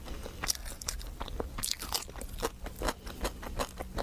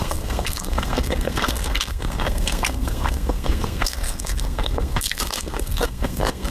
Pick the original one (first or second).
first